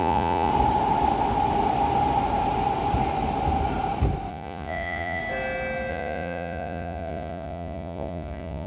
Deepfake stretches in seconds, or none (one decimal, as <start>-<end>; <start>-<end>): 0.0-0.5; 4.3-5.2; 5.9-8.7